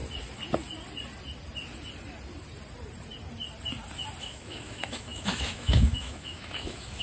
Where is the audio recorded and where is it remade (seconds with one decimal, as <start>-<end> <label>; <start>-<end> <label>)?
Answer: 0.0-4.2 recorded; 4.2-7.0 remade